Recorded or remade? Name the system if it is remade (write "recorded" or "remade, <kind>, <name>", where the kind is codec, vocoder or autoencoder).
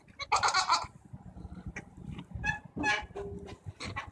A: recorded